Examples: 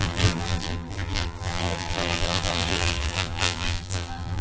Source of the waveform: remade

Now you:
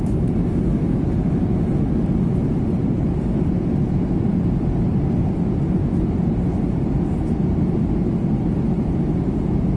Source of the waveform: recorded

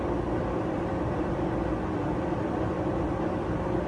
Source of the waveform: recorded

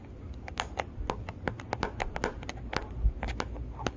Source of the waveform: recorded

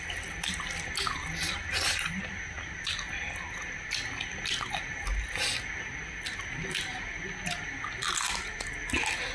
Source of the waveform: recorded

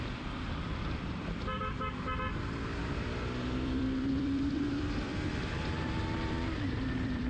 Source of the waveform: remade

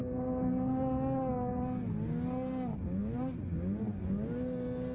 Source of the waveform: recorded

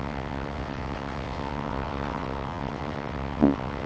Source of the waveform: remade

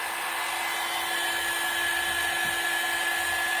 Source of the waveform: recorded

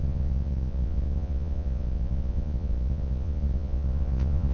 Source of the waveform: remade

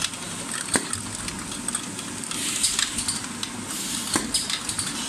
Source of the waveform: recorded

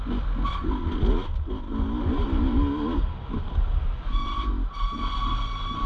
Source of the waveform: recorded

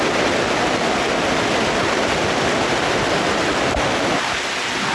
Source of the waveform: recorded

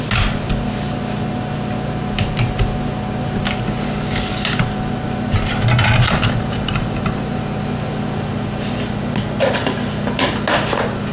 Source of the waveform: recorded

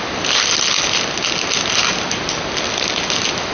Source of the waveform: recorded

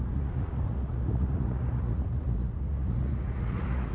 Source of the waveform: remade